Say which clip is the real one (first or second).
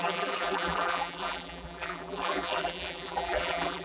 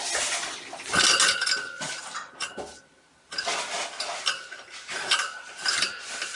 second